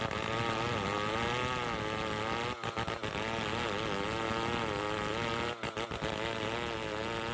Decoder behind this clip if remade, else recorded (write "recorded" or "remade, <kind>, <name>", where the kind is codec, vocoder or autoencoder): recorded